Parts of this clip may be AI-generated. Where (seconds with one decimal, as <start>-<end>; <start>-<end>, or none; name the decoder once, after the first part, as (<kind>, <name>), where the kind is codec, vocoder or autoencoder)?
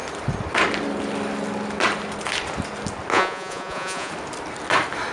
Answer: 3.1-4.1 (vocoder, Vocos)